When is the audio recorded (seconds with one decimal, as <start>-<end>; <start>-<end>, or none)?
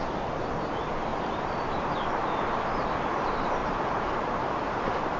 0.0-1.1; 1.6-3.6